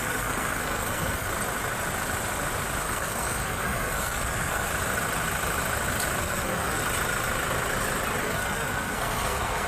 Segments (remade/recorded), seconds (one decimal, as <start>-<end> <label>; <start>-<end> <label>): 0.0-1.3 remade; 1.3-2.8 recorded; 2.8-4.7 remade; 4.7-6.2 recorded; 6.2-6.8 remade; 6.8-8.2 recorded; 8.2-9.7 remade